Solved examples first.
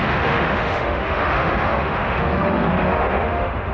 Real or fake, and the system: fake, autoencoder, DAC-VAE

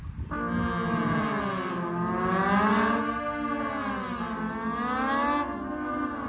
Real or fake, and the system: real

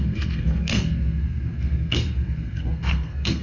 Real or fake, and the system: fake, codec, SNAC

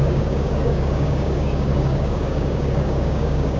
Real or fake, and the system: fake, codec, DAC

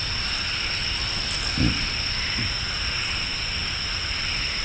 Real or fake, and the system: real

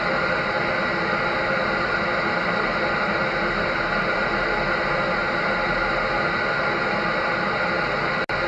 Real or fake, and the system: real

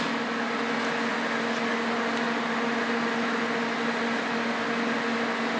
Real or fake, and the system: real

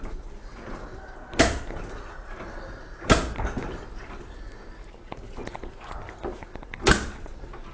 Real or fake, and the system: real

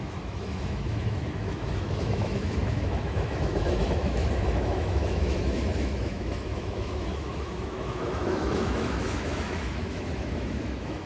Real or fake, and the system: fake, autoencoder, DAC-VAE